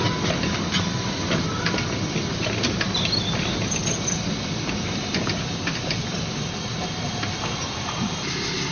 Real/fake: real